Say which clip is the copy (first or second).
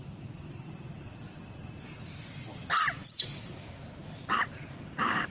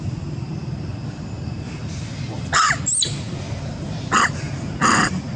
first